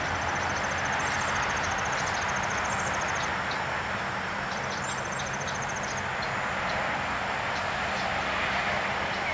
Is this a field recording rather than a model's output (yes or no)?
yes